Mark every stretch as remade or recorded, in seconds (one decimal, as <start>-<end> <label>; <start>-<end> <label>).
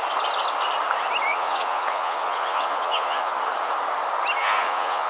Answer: 0.0-1.3 recorded; 1.3-3.3 remade; 3.3-4.4 recorded; 4.4-5.1 remade